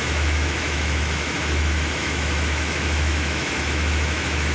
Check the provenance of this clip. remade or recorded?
remade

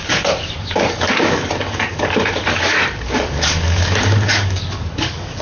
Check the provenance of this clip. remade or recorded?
remade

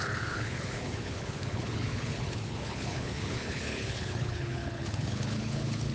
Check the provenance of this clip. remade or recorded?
remade